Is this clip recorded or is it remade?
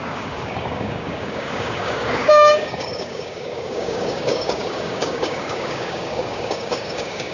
remade